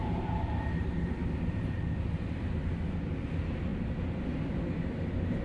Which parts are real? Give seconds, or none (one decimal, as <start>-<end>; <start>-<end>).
0.0-5.4